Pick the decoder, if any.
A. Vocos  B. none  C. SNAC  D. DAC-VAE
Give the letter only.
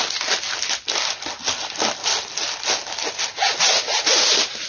B